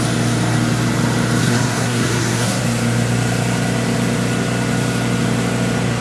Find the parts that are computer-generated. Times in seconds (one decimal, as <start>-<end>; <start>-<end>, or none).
1.4-2.6

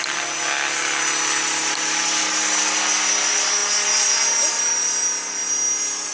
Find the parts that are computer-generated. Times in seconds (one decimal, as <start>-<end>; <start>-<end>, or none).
none

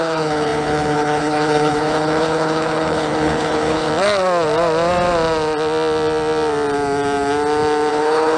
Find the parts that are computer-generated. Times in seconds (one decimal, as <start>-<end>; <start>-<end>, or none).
0.0-3.9; 7.9-8.4

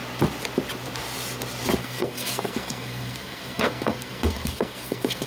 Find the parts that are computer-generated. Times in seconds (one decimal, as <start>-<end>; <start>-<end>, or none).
1.8-5.3

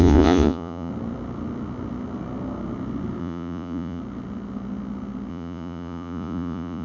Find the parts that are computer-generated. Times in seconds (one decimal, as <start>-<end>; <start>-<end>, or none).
0.0-0.9; 3.2-4.0; 5.3-6.8

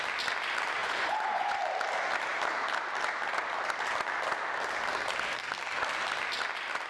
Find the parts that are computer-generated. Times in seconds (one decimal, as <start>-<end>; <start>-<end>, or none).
0.8-1.6

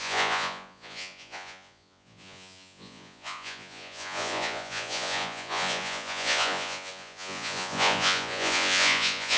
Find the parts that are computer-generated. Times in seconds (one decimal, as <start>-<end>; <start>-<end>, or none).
0.0-9.4

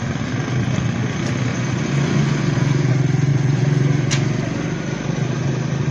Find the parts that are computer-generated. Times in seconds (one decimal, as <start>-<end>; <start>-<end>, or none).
1.5-2.9; 3.3-4.1